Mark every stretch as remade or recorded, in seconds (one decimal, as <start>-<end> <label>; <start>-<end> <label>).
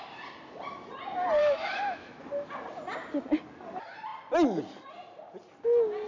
0.0-1.4 recorded; 1.4-2.2 remade; 2.2-6.1 recorded